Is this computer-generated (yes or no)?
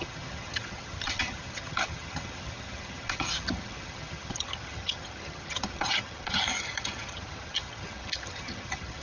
yes